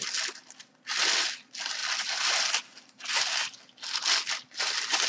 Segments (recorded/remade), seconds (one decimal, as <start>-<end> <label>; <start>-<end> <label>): 0.0-5.1 recorded